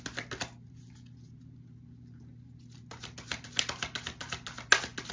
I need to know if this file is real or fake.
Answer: real